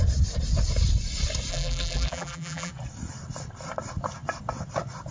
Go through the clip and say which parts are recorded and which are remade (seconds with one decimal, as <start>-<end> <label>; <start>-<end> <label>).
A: 0.0-1.5 recorded; 1.5-2.7 remade; 2.7-5.1 recorded